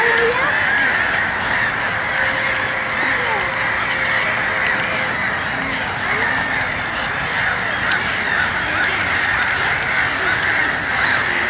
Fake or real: real